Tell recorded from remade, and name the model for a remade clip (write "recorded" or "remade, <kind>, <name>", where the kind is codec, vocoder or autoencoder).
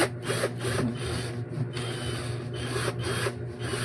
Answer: recorded